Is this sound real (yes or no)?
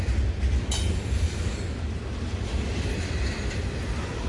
yes